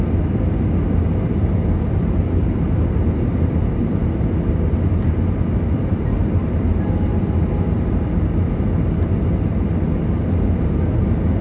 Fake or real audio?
real